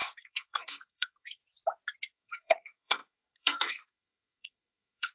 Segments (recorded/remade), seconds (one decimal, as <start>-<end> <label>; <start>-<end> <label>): 0.0-1.4 remade; 1.4-2.1 recorded; 2.1-5.1 remade

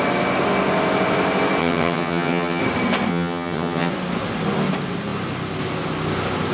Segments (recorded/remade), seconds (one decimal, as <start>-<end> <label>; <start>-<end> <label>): 0.0-1.6 recorded; 1.6-2.6 remade; 2.6-3.1 recorded; 3.1-3.9 remade; 3.9-6.5 recorded

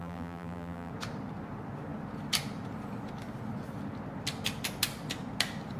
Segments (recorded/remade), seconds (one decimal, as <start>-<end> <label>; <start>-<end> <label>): 0.0-0.9 remade; 0.9-5.8 recorded